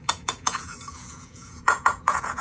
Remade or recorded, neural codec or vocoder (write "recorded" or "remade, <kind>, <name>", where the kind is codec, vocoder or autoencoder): remade, vocoder, Vocos